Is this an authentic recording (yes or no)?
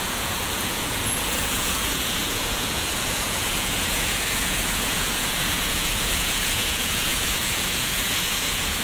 no